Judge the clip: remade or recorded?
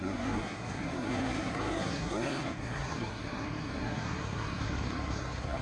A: remade